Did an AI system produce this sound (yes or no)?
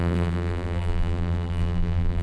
yes